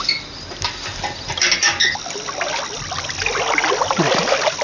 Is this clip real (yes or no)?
yes